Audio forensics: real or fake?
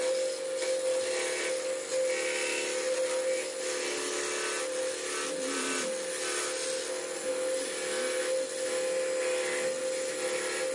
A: real